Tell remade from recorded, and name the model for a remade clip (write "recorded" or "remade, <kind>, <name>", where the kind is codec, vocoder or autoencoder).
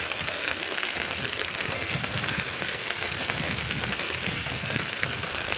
remade, codec, SNAC